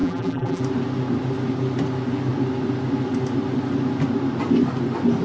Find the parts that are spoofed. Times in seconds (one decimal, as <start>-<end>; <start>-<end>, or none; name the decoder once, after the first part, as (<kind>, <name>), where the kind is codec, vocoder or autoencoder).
0.0-0.6 (vocoder, BigVGAN v2)